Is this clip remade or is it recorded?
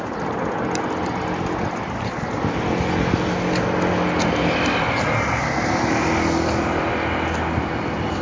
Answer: recorded